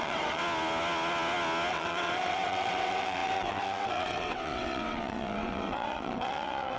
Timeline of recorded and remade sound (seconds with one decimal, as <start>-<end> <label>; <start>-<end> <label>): 0.0-0.4 remade; 0.4-1.7 recorded; 1.7-6.8 remade